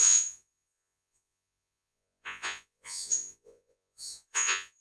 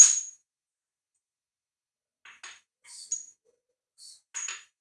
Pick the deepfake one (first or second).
first